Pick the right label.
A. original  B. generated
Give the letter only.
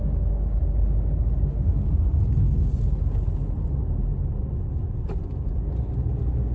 A